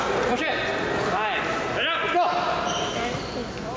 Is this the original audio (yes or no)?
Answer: yes